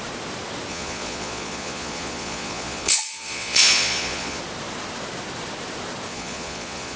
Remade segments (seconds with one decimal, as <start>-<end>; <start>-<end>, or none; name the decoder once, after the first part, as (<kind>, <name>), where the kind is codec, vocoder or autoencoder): 0.7-4.4 (vocoder, Vocos); 6.1-7.0